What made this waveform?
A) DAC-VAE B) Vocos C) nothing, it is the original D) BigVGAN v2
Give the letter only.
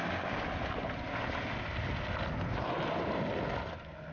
C